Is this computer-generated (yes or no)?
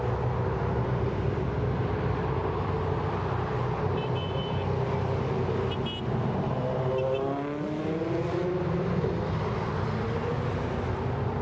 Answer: no